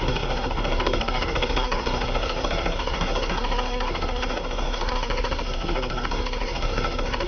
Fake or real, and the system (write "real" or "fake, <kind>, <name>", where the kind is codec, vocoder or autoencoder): fake, codec, SNAC